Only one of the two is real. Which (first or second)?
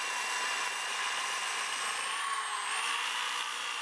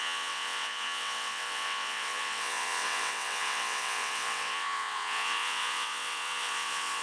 first